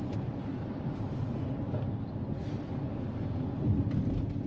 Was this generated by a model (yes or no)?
no